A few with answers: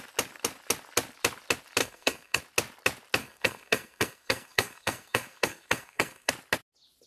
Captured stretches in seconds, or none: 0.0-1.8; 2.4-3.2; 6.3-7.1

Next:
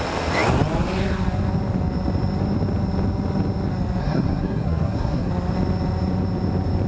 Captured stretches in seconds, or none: 0.0-4.0; 5.3-6.9

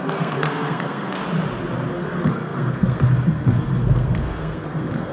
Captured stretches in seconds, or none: 1.2-1.9

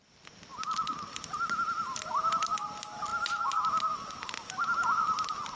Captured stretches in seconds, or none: 0.0-5.6